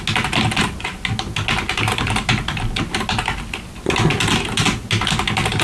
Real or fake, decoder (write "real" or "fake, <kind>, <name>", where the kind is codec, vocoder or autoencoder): real